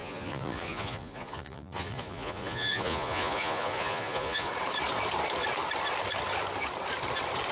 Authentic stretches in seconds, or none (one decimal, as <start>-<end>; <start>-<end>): 4.5-7.5